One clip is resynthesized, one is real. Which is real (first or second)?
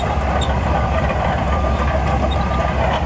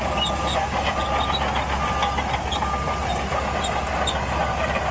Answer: second